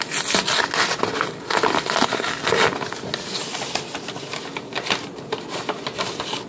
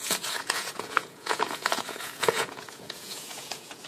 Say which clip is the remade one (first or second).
second